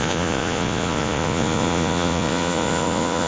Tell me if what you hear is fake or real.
fake